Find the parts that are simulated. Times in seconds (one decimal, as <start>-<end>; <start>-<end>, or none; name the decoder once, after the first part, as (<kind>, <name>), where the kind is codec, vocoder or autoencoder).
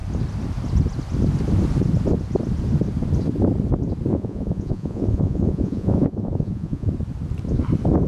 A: 4.1-6.9 (vocoder, Vocos)